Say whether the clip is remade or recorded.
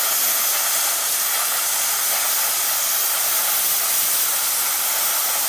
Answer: recorded